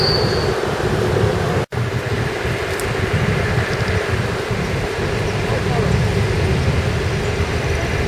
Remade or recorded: recorded